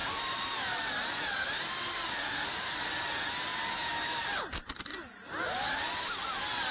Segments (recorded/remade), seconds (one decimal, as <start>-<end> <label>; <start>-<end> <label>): 0.0-6.7 recorded